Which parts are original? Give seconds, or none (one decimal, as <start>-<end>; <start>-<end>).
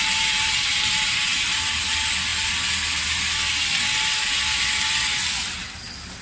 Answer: 0.0-6.2